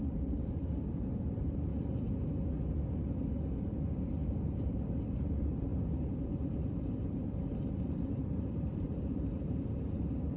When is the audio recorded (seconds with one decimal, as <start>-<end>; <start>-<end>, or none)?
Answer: 1.7-3.6

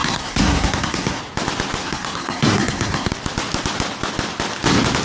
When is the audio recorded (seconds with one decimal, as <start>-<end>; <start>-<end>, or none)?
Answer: 1.2-1.8; 3.1-5.0

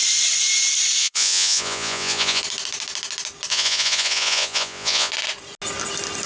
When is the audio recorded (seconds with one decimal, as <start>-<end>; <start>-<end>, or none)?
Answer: 0.0-1.0; 2.4-3.5; 5.1-6.3

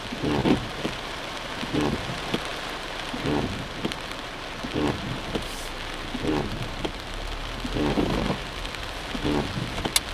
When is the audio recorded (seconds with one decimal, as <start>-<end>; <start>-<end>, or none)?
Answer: 0.0-10.1

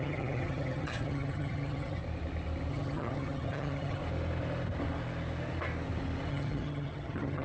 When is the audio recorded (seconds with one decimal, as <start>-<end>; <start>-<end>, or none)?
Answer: 2.0-2.7; 4.0-6.3

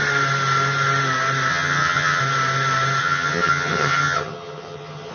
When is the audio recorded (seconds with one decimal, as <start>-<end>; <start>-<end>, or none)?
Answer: 0.0-1.5; 2.2-3.0

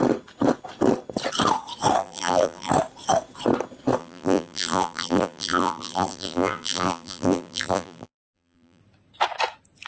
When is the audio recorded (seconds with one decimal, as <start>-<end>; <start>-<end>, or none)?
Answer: 0.0-2.0; 2.7-4.0; 8.8-9.9

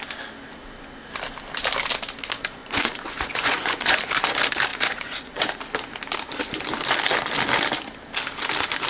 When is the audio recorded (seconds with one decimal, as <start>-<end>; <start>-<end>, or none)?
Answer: 0.0-2.6; 4.1-4.7; 5.5-8.9